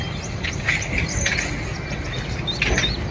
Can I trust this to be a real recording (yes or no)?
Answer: yes